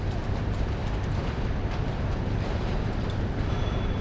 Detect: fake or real real